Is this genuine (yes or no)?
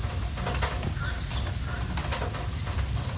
yes